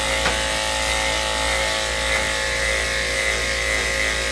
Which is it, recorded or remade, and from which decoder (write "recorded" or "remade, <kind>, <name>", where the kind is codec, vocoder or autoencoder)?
recorded